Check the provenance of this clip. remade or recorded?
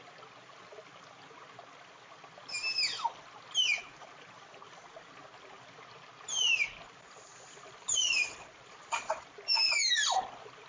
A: recorded